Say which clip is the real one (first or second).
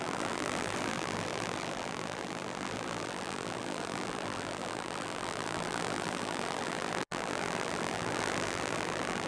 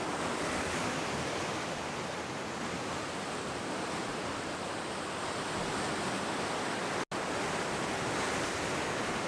second